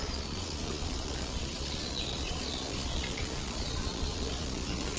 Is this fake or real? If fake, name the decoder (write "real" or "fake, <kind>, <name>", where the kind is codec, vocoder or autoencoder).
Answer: fake, vocoder, Vocos